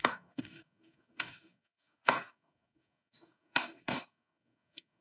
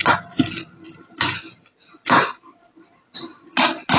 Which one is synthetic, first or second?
first